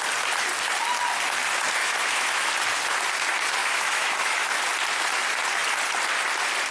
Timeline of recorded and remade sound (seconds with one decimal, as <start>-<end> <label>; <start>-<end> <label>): 0.0-1.8 recorded; 1.8-2.5 remade; 2.5-3.6 recorded; 3.6-4.5 remade; 4.5-6.7 recorded